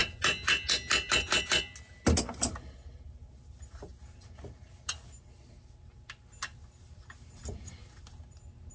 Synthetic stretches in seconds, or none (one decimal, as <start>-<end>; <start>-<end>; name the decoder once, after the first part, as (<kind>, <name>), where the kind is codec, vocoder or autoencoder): none